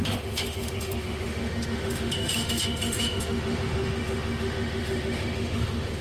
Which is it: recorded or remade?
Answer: remade